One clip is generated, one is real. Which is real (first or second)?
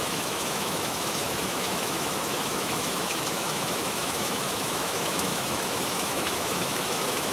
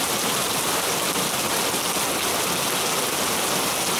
second